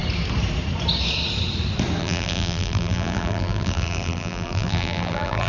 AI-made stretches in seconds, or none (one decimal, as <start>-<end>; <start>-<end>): 2.0-5.5